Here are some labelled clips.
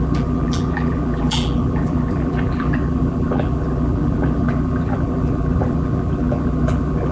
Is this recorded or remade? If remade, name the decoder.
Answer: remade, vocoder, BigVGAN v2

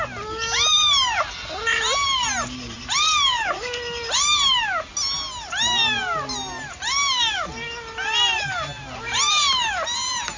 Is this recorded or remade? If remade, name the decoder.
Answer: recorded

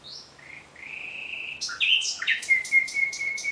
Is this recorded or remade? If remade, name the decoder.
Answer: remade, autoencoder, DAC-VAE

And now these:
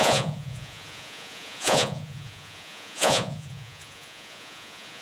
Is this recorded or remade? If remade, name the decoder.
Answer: remade, vocoder, Vocos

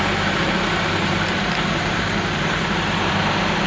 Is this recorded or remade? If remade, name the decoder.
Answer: remade, vocoder, BigVGAN v2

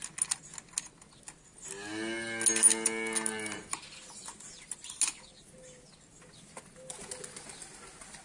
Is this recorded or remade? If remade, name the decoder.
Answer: recorded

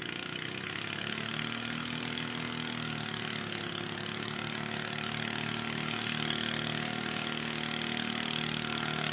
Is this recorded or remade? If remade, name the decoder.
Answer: recorded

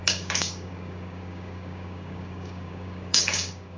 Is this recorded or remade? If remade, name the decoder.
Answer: remade, codec, DAC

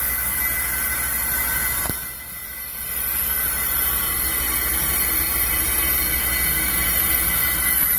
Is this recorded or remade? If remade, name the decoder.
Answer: recorded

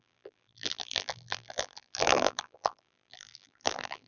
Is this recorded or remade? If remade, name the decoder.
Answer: remade, vocoder, BigVGAN v2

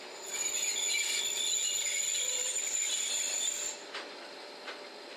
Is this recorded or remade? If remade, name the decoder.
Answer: recorded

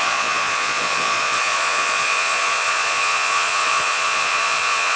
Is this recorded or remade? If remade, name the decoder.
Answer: remade, vocoder, Vocos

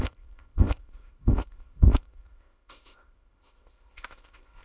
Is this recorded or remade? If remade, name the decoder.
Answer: remade, codec, ZipCodec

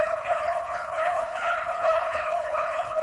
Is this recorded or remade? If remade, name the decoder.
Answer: remade, codec, HILCodec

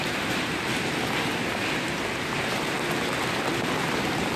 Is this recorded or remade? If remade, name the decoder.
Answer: recorded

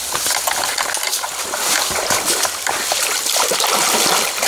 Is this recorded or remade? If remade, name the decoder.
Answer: recorded